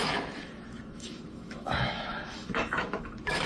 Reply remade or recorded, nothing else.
remade